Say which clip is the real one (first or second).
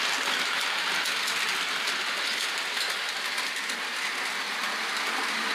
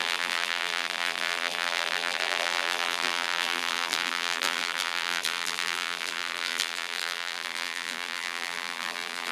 first